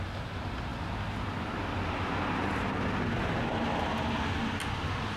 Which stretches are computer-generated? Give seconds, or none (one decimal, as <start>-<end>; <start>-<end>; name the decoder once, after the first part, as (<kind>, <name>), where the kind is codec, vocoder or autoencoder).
none

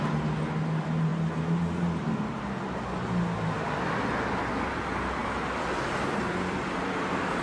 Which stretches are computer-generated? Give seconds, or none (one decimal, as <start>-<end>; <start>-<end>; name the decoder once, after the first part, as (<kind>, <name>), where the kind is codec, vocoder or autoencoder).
none

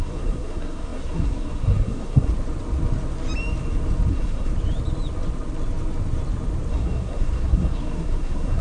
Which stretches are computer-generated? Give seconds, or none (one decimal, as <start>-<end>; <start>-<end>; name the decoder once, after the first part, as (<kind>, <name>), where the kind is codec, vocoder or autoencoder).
0.0-2.3 (codec, SNAC); 4.1-4.5; 6.7-8.6

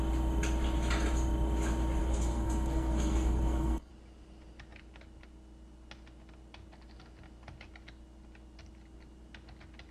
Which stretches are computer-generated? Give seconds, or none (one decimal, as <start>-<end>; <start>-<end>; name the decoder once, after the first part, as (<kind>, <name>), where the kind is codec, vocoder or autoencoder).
2.0-3.9 (codec, SNAC)

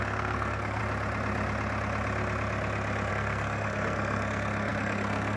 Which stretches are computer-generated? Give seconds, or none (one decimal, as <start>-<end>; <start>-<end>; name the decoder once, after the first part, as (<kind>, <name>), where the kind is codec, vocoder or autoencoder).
0.0-0.8 (codec, SNAC); 3.1-5.4

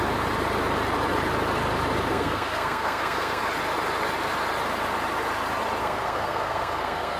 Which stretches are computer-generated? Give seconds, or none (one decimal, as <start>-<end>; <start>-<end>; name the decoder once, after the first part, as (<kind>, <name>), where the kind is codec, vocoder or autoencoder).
2.1-3.4 (codec, SNAC); 5.8-7.2

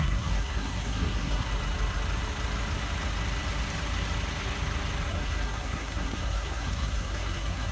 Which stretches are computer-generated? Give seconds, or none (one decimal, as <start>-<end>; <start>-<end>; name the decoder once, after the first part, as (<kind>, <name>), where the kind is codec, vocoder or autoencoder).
0.0-1.5 (codec, SNAC); 5.1-7.7